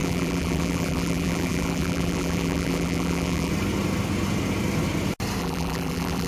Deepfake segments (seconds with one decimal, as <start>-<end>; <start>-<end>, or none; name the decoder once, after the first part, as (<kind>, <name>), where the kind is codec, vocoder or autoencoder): 0.0-3.5 (vocoder, BigVGAN v2); 5.4-6.3